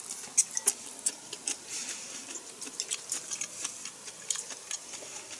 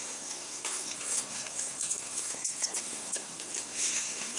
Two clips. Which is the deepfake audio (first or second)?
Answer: second